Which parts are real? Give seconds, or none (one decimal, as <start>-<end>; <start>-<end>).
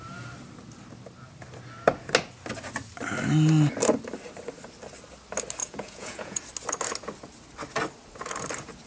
0.0-5.6; 6.4-8.9